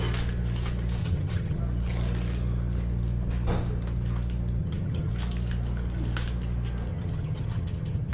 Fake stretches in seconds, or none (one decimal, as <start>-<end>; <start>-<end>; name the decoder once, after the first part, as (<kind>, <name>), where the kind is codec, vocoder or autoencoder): 1.0-1.6 (vocoder, HiFi-GAN); 4.6-5.1; 6.9-8.1